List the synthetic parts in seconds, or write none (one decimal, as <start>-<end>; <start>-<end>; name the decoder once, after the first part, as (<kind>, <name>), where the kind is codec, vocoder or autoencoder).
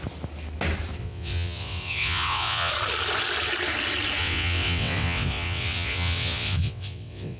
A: 1.0-2.7 (vocoder, WaveNeXt); 4.2-7.4